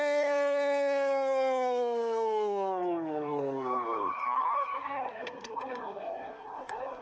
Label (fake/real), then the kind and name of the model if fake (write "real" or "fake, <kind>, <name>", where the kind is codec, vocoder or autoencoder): fake, codec, SNAC